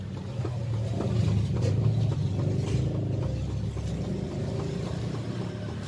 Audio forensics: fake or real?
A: real